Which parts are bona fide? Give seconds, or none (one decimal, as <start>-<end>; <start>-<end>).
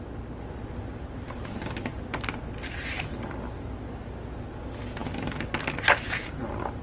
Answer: 0.0-6.8